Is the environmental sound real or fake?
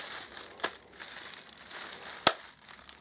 real